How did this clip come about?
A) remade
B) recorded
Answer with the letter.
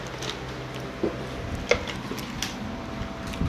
B